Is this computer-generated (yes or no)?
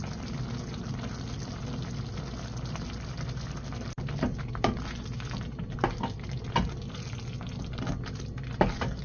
no